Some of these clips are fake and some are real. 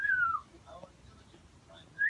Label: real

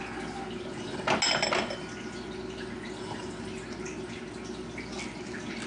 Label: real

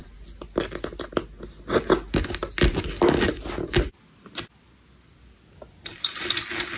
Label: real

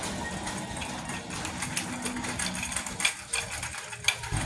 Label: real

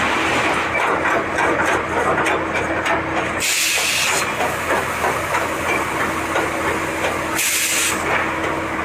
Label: real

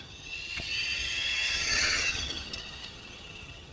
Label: fake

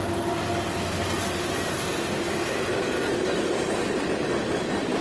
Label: real